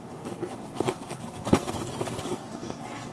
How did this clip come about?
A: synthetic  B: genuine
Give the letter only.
A